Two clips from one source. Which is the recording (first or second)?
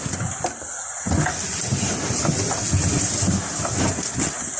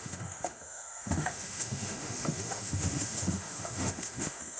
first